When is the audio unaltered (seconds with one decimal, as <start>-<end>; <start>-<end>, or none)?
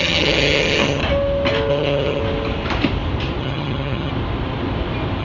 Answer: 1.0-1.7; 2.2-3.4; 4.1-5.2